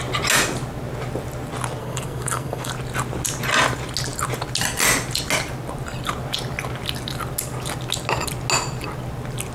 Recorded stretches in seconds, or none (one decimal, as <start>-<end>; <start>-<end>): 0.0-1.8; 2.7-9.5

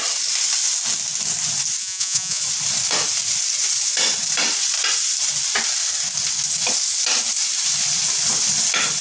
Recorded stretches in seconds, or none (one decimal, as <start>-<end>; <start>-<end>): 0.0-1.8; 2.4-9.0

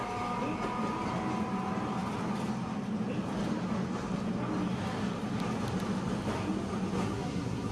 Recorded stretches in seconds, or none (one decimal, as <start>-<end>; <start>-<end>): 0.0-7.0

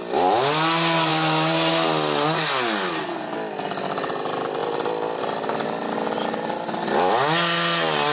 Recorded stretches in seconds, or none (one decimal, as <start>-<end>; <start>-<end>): 0.0-1.1; 1.7-4.6; 5.2-8.1

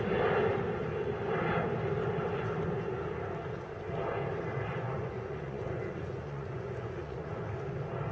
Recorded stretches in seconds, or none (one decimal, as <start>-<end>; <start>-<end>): 0.0-4.7; 7.4-8.1

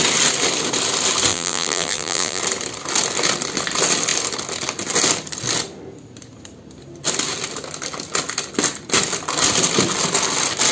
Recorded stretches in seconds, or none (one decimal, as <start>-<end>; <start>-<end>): 0.0-1.3; 2.4-10.7